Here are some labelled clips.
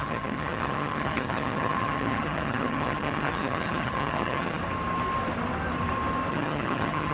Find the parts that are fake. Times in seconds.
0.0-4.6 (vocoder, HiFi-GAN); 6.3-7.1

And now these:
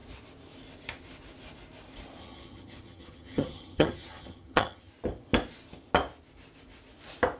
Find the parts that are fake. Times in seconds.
2.2-4.9 (vocoder, HiFi-GAN)

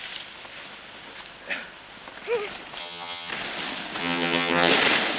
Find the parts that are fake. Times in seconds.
2.8-3.3 (vocoder, HiFi-GAN); 4.0-4.7

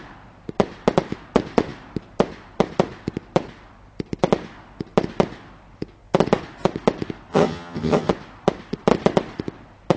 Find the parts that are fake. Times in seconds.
7.3-8.1 (vocoder, HiFi-GAN)

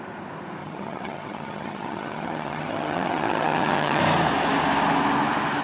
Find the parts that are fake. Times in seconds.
0.6-4.0 (vocoder, HiFi-GAN)

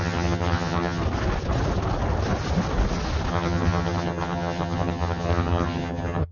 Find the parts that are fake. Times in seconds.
0.0-1.0 (vocoder, HiFi-GAN); 3.3-6.3

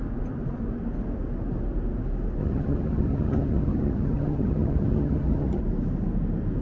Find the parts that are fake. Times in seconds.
2.4-5.6 (vocoder, HiFi-GAN)

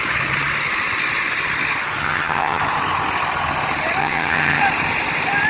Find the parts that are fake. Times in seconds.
2.0-2.6 (vocoder, HiFi-GAN); 4.0-4.6